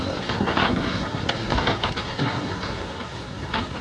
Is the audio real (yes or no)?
no